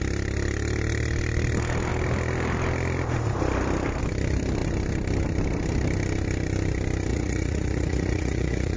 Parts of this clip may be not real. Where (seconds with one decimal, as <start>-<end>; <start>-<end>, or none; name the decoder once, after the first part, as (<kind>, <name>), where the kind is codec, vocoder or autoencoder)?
7.1-8.8 (vocoder, Vocos)